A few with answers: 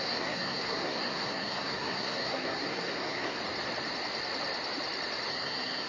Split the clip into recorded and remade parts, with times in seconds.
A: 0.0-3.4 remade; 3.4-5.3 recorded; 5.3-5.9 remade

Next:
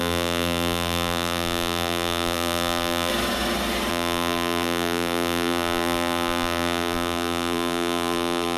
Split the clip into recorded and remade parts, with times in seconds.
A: 0.0-3.1 remade; 3.1-3.9 recorded; 3.9-8.6 remade